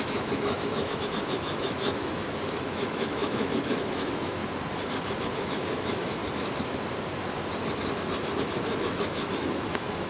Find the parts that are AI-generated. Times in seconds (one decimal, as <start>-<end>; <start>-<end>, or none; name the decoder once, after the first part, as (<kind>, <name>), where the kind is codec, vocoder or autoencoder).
0.0-4.4 (autoencoder, DAC-VAE); 5.4-6.2; 8.4-10.1